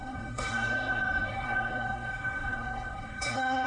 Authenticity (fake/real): fake